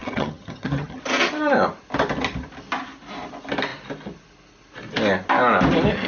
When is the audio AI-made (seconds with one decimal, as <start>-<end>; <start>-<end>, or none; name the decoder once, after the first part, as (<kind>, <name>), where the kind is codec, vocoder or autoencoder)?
0.0-1.0 (vocoder, HiFi-GAN)